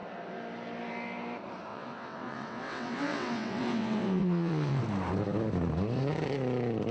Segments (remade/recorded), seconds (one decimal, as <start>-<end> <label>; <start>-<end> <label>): 0.0-1.7 recorded; 1.7-4.8 remade; 4.8-6.9 recorded